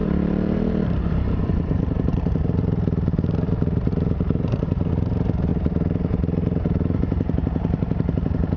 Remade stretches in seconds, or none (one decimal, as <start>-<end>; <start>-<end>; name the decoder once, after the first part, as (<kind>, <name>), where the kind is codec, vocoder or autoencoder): 0.0-4.9 (vocoder, BigVGAN v2); 5.5-8.6